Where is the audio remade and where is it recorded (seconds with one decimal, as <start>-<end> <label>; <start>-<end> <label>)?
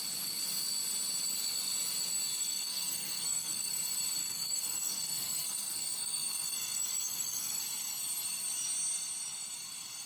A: 0.0-2.4 recorded; 2.4-3.7 remade; 3.7-4.2 recorded; 4.2-7.6 remade; 7.6-10.1 recorded